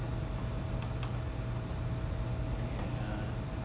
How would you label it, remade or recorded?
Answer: recorded